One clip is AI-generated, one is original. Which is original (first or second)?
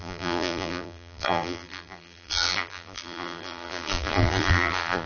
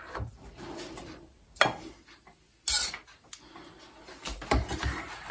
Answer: second